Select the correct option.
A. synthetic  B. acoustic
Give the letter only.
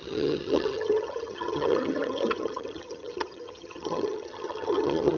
A